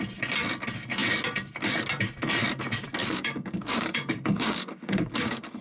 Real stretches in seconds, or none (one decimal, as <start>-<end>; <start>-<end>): 0.0-3.0

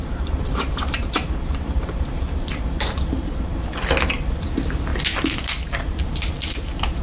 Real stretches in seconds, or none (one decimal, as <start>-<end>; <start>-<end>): 3.5-4.4; 4.9-5.8

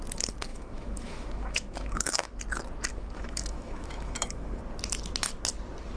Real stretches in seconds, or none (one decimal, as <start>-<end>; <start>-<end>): 0.0-0.5; 2.4-2.9; 4.6-6.0

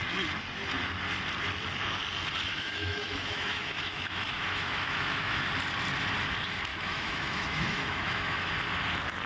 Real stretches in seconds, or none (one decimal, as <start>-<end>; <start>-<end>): 0.0-2.5; 5.5-6.7; 8.5-9.3

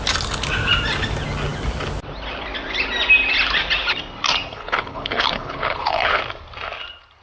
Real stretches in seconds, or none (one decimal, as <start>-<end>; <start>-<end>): 0.0-4.5; 6.2-7.2

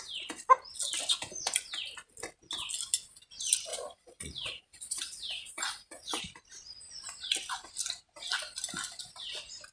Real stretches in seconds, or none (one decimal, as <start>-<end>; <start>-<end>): 0.0-3.7; 6.2-9.7

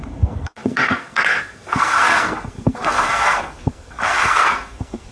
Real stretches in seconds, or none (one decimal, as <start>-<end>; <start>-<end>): none

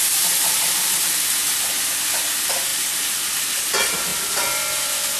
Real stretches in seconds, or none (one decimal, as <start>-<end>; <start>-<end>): none